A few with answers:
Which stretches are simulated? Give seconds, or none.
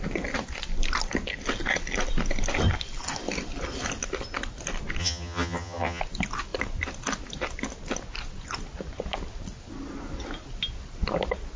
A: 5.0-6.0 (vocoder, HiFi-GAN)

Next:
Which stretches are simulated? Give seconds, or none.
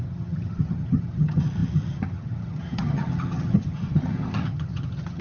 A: 0.0-5.2 (vocoder, HiFi-GAN)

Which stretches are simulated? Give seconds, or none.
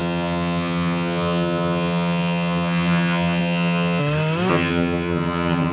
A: 0.0-4.0 (vocoder, HiFi-GAN); 4.5-5.7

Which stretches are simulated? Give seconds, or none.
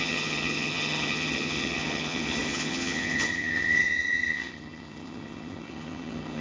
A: 0.0-6.4 (vocoder, HiFi-GAN)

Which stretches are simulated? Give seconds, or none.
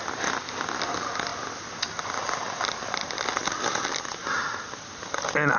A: none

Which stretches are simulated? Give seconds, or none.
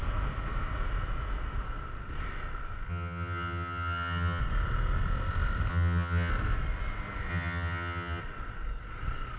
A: 2.9-4.4 (vocoder, HiFi-GAN); 5.7-6.3; 7.3-8.2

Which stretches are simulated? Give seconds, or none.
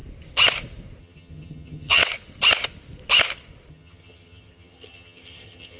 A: 1.0-2.0 (vocoder, HiFi-GAN); 3.7-5.8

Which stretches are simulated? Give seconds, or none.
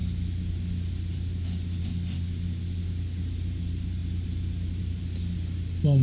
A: none